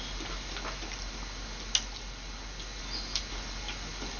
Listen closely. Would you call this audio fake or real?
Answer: real